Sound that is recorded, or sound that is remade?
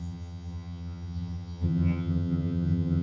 remade